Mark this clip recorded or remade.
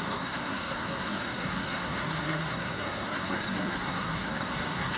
remade